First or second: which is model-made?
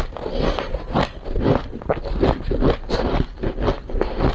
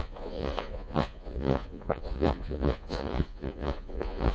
second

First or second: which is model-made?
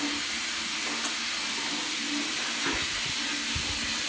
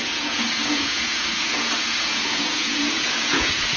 second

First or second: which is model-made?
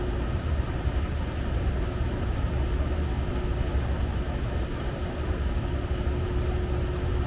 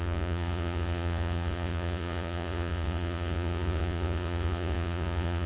second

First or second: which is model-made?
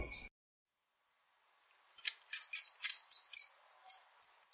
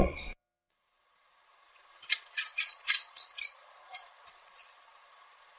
second